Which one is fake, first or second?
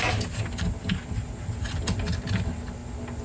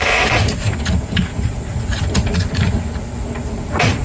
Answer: second